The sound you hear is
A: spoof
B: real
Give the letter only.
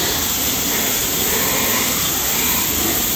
B